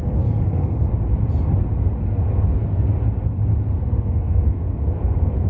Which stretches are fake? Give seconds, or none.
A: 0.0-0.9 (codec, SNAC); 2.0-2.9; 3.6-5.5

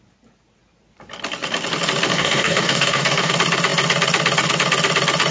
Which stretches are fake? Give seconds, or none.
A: 2.1-3.3 (codec, DAC)

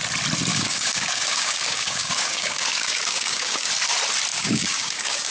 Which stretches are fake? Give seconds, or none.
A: 0.5-3.7 (codec, DAC); 4.3-5.3

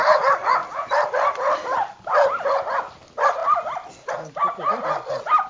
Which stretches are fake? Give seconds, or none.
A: none

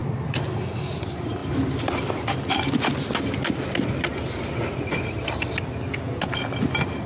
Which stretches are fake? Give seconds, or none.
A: none

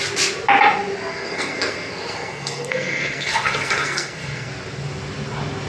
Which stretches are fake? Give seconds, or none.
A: 1.1-4.5 (codec, SNAC)

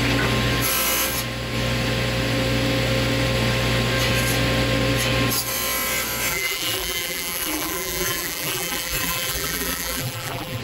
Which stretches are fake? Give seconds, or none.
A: 6.3-10.6 (vocoder, BigVGAN v2)